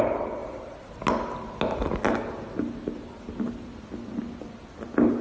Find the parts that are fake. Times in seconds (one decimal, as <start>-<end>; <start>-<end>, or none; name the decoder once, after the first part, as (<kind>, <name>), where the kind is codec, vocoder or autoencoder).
none

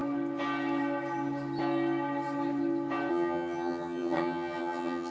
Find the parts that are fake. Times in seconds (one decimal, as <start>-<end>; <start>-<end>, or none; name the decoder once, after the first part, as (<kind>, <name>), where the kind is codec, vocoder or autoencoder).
3.1-5.1 (vocoder, HiFi-GAN)

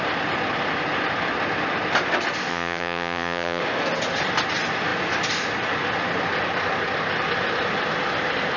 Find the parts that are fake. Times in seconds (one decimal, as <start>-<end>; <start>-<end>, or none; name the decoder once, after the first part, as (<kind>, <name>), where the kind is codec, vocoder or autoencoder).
2.5-3.6 (vocoder, HiFi-GAN)

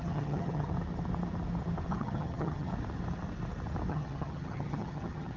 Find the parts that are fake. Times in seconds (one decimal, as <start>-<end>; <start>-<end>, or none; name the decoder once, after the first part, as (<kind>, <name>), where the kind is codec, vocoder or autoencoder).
0.0-0.7 (vocoder, HiFi-GAN); 1.9-2.7; 3.9-5.4